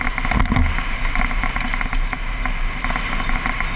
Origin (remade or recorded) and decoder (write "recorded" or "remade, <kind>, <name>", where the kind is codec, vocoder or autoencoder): recorded